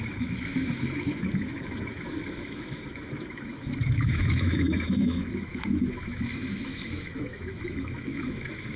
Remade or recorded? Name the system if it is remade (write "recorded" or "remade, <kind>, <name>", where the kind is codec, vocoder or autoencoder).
remade, autoencoder, DAC-VAE